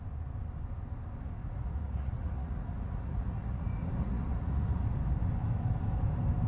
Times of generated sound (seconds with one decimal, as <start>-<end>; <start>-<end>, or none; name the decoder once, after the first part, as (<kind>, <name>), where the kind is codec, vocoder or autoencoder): 1.4-4.8 (vocoder, Vocos)